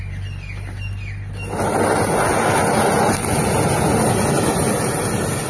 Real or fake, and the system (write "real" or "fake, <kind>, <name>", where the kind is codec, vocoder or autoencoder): real